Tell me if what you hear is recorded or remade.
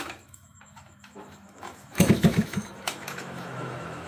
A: remade